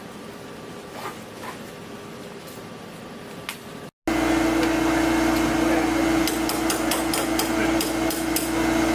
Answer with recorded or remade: recorded